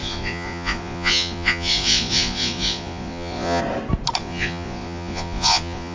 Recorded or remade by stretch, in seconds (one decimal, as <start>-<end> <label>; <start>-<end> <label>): 0.0-3.6 remade; 3.6-4.2 recorded; 4.2-5.9 remade